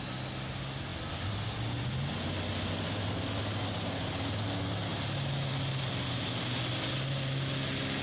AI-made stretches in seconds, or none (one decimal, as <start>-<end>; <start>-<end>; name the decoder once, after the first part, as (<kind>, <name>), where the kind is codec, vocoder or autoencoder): none